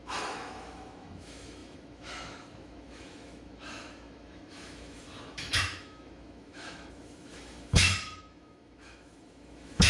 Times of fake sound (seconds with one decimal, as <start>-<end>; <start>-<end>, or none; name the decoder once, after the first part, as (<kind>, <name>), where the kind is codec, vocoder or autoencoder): 0.0-9.9 (autoencoder, DAC-VAE)